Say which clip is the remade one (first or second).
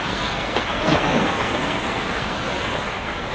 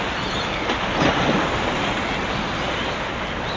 first